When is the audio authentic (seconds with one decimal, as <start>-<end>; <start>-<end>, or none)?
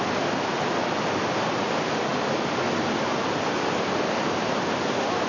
0.0-5.3